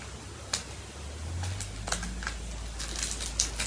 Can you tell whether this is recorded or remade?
recorded